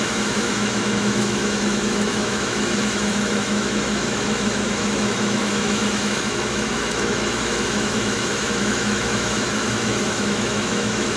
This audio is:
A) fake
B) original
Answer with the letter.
A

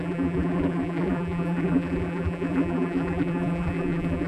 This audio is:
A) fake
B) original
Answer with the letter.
A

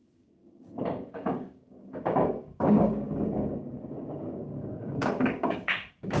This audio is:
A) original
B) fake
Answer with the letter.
B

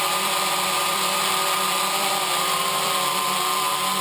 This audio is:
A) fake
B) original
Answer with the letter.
A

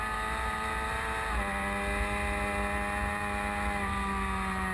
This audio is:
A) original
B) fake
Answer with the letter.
A